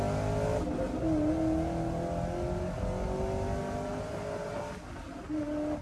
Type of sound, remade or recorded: recorded